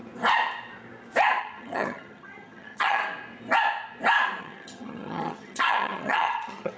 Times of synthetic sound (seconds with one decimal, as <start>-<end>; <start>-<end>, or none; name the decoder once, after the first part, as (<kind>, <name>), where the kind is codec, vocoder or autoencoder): 1.4-3.0 (vocoder, HiFi-GAN); 4.4-6.8